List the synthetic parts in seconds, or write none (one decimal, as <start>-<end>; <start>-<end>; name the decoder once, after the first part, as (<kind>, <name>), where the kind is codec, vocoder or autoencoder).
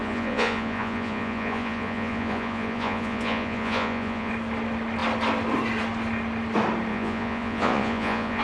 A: 0.0-4.3 (vocoder, Vocos); 6.9-8.4